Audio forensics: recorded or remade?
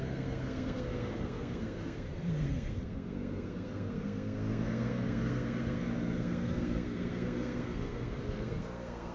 remade